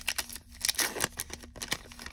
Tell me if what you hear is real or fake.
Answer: real